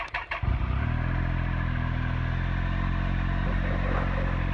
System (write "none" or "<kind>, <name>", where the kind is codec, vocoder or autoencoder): none